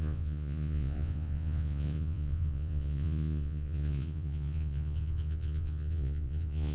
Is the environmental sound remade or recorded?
remade